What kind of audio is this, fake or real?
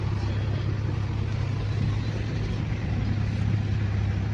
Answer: real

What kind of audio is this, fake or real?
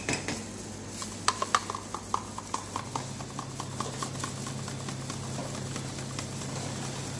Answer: real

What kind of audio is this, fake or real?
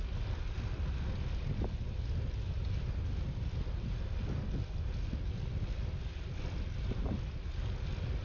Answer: real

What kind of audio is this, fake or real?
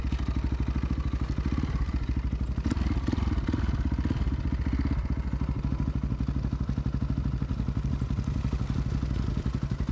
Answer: real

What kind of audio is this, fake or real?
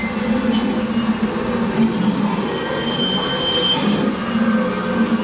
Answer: real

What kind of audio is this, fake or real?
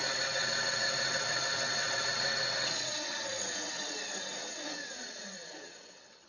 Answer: fake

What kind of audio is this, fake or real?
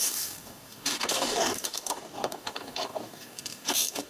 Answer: fake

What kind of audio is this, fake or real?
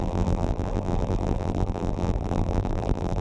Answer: fake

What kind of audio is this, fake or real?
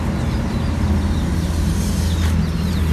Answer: real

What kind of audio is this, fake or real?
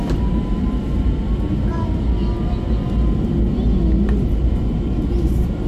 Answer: real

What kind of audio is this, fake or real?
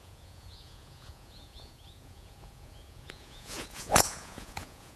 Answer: fake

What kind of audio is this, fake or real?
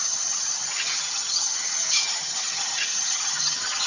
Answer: fake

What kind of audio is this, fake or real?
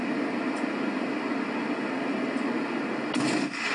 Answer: real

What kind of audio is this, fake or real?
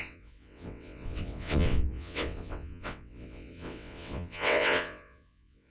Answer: fake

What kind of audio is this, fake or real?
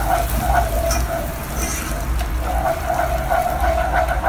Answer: real